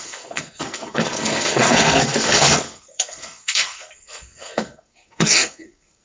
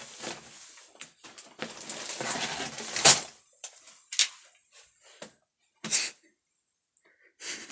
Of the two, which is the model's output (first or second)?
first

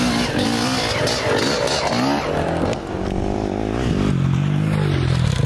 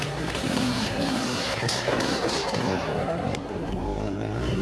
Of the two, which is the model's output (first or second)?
second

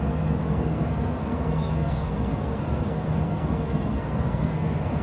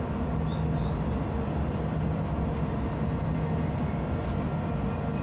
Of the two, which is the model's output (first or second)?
first